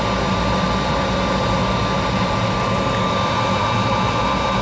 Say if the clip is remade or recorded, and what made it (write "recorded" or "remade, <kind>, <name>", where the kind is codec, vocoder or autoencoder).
recorded